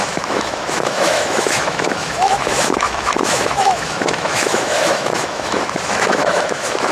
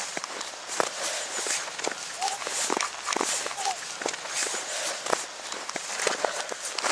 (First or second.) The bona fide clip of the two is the second